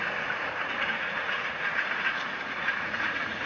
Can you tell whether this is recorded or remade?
remade